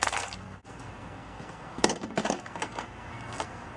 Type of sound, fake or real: fake